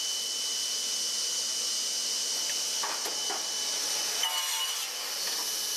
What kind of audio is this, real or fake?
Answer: real